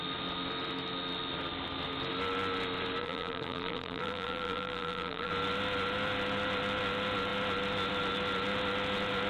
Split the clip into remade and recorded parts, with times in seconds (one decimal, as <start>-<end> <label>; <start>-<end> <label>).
0.0-3.0 recorded; 3.0-5.3 remade; 5.3-9.3 recorded